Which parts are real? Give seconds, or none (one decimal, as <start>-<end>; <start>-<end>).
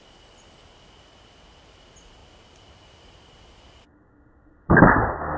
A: 0.0-2.2